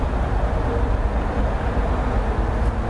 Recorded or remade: recorded